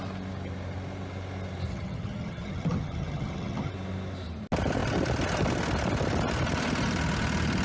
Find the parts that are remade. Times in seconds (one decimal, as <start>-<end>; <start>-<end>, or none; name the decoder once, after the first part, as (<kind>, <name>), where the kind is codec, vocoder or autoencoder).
1.7-3.7 (vocoder, HiFi-GAN)

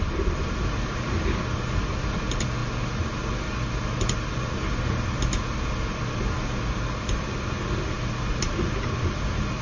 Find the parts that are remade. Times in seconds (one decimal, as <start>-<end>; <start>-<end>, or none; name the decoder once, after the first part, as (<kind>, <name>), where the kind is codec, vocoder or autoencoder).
none

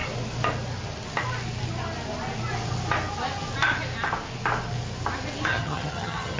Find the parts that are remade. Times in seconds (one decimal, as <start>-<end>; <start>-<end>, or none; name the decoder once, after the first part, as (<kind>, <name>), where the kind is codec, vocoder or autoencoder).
5.5-6.4 (vocoder, HiFi-GAN)

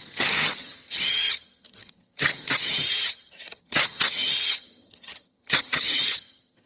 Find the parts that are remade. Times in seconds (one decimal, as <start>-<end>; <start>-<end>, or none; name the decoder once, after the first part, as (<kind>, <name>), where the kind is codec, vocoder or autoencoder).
0.0-6.7 (vocoder, HiFi-GAN)